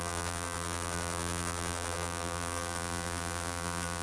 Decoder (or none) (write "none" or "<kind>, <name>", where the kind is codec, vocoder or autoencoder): vocoder, BigVGAN v2